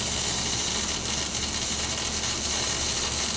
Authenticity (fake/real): real